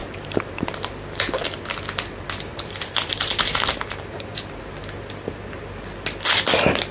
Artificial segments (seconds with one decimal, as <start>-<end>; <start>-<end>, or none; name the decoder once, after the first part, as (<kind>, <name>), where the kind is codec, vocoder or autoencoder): 0.0-0.7 (vocoder, BigVGAN v2); 2.5-4.6